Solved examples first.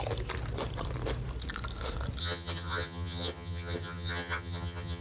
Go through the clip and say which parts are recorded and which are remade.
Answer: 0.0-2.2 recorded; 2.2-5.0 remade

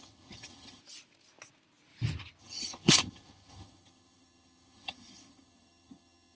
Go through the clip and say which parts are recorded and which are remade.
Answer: 0.0-0.8 remade; 0.8-2.4 recorded; 2.4-6.3 remade

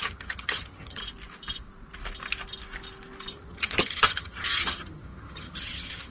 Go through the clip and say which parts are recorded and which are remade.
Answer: 0.0-1.0 remade; 1.0-3.3 recorded; 3.3-6.1 remade

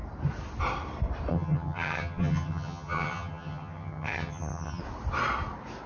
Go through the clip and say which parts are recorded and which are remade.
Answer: 0.0-1.3 recorded; 1.3-4.8 remade; 4.8-5.9 recorded